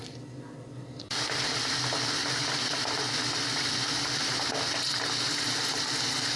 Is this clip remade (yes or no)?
no